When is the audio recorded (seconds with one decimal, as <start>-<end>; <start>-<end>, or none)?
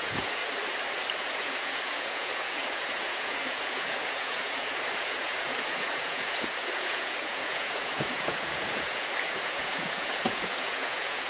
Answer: 0.4-1.2